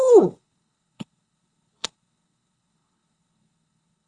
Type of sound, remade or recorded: remade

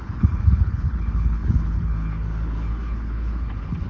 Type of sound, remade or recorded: remade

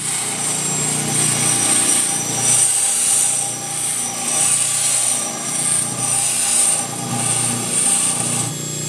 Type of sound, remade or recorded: recorded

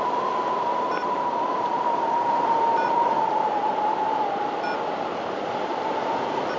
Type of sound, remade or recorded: recorded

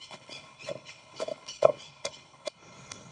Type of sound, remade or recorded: remade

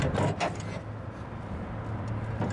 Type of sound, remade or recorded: recorded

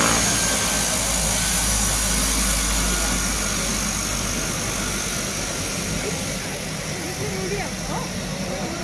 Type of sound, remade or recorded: recorded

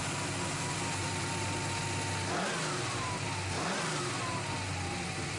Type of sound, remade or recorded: recorded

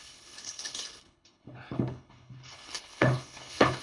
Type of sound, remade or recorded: remade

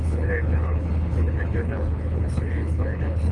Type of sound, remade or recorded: remade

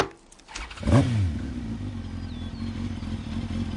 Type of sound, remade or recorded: recorded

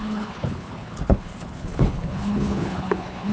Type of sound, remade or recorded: remade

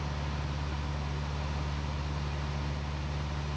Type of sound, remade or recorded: recorded